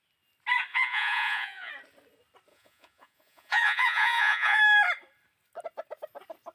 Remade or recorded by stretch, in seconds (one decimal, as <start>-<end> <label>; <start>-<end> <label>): 0.0-0.7 recorded; 0.7-1.7 remade; 1.7-2.5 recorded; 2.5-4.6 remade; 4.6-6.5 recorded